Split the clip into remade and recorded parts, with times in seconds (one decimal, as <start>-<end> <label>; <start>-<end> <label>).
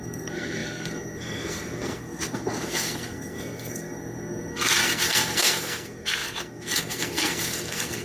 0.0-8.0 remade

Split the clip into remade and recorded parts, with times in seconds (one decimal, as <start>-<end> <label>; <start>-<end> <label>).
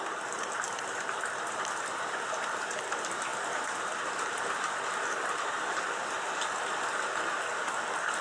0.0-8.2 recorded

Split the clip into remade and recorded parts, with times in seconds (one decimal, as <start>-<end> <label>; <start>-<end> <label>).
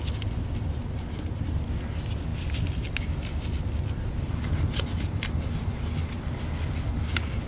0.0-7.5 recorded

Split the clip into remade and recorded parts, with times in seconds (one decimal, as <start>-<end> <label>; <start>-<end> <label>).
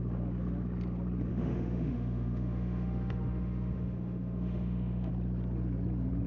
0.0-1.3 recorded; 1.3-5.1 remade; 5.1-6.3 recorded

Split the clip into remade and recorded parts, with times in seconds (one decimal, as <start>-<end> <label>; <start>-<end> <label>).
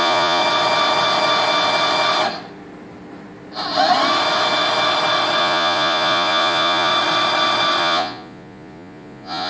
0.0-0.4 remade; 0.4-5.4 recorded; 5.4-6.9 remade; 6.9-7.8 recorded; 7.8-9.5 remade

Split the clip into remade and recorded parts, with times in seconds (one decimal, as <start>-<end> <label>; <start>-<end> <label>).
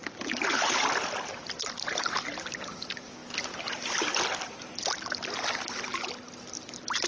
0.0-7.1 recorded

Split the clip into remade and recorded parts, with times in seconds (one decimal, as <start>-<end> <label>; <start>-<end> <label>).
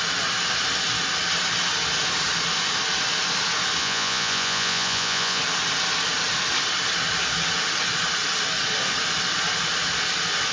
0.0-3.8 recorded; 3.8-5.4 remade; 5.4-10.5 recorded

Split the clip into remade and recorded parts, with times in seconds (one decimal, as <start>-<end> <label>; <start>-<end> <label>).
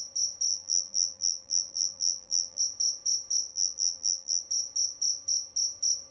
0.0-0.5 recorded; 0.5-2.6 remade; 2.6-3.5 recorded; 3.5-4.4 remade; 4.4-6.1 recorded